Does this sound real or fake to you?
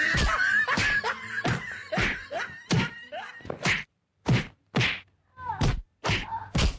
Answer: real